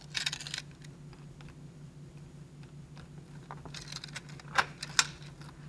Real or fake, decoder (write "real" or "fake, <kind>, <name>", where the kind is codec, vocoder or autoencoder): real